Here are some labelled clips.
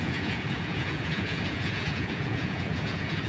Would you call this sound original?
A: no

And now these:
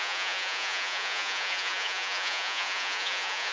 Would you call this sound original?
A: no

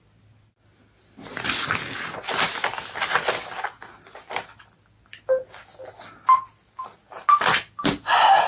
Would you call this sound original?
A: yes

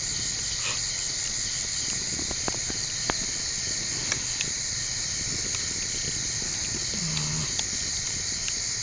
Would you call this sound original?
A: yes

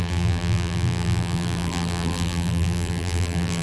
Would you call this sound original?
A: no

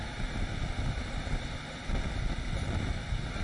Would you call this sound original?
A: yes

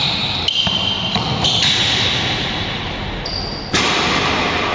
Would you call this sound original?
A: yes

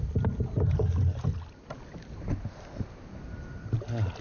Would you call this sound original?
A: yes